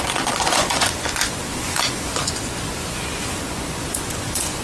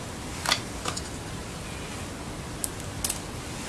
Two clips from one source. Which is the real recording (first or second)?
second